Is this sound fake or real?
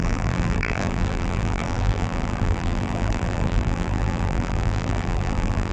fake